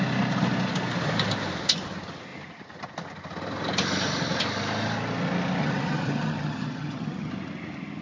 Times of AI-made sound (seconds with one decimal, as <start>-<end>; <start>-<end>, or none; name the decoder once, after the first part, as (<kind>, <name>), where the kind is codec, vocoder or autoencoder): 5.6-7.3 (vocoder, HiFi-GAN)